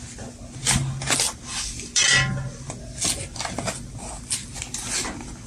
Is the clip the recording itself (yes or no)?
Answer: yes